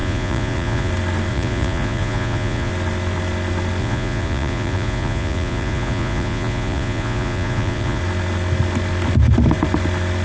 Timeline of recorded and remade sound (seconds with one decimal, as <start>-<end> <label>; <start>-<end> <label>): 0.0-0.9 remade; 0.9-1.3 recorded; 1.3-2.7 remade; 2.7-3.8 recorded; 3.8-8.0 remade; 8.0-10.2 recorded